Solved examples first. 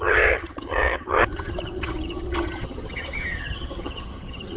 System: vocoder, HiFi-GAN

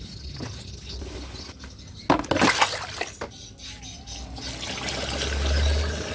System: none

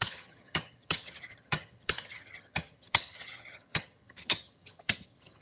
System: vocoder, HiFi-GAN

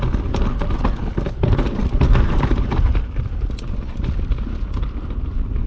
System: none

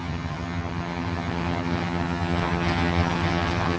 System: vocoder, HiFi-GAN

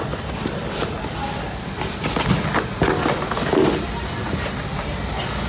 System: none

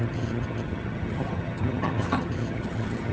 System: vocoder, HiFi-GAN